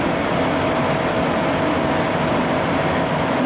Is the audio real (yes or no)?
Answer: yes